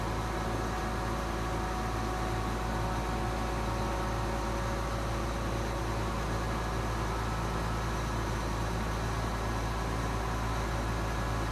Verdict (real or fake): real